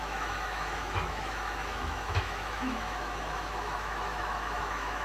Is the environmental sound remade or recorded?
remade